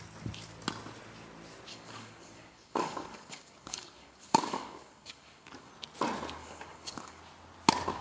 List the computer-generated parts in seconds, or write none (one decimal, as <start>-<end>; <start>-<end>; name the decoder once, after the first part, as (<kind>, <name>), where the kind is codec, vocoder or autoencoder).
1.7-5.7 (codec, DAC); 6.4-7.2